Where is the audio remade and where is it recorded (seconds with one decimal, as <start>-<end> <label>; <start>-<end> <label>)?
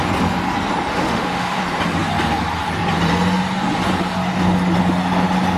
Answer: 0.0-0.9 recorded; 0.9-1.6 remade; 1.6-5.6 recorded